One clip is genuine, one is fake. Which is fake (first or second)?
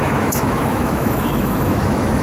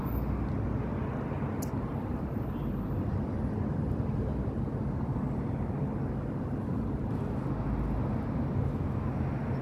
first